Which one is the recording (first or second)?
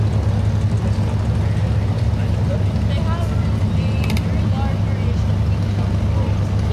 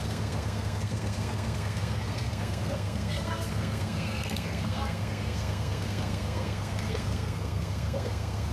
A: first